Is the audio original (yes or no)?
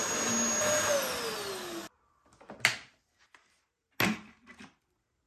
yes